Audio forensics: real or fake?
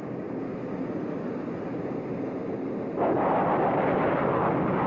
real